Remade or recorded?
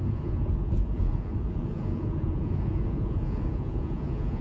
remade